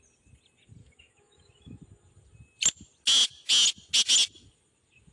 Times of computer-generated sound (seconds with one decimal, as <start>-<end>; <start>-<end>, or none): 0.8-1.8